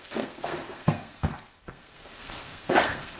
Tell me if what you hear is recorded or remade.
remade